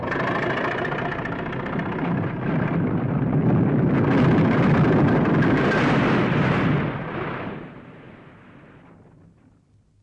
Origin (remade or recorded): recorded